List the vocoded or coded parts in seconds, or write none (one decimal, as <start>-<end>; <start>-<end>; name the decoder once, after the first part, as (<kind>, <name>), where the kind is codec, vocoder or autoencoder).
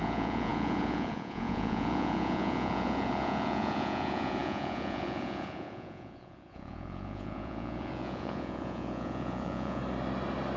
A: 0.0-9.8 (vocoder, Vocos)